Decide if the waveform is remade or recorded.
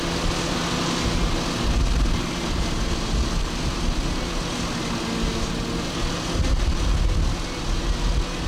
recorded